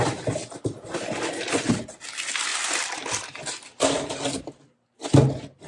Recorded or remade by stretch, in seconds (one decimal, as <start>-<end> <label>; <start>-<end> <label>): 0.0-5.7 recorded